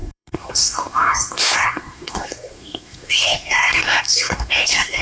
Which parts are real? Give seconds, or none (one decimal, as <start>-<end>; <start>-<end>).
none